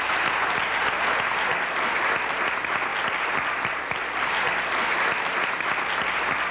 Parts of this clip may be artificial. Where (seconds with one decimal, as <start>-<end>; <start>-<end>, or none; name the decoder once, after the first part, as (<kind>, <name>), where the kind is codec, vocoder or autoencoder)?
none